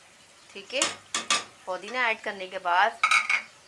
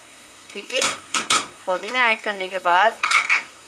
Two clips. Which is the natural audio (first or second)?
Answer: first